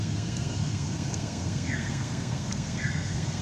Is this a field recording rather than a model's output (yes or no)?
no